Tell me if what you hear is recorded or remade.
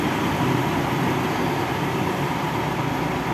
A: recorded